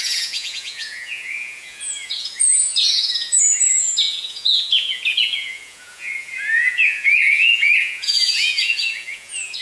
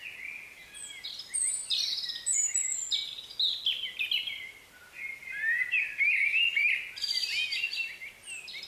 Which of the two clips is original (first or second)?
second